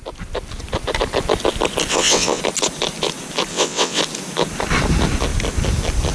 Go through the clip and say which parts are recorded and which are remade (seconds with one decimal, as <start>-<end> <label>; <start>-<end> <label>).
0.0-1.9 recorded; 1.9-2.4 remade; 2.4-3.5 recorded; 3.5-4.0 remade; 4.0-6.1 recorded